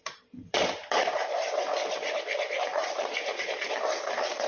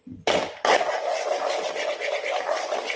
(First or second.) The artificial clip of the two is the first